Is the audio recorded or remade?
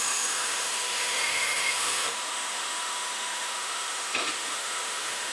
remade